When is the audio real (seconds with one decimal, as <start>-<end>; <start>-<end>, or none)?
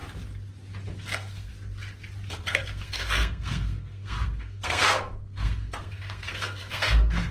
0.0-0.9; 1.5-2.3